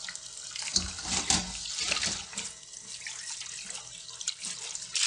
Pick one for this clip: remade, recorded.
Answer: recorded